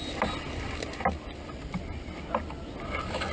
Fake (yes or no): no